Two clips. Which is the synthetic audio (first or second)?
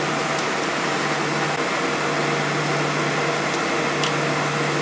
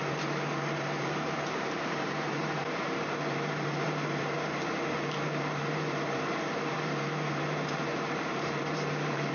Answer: second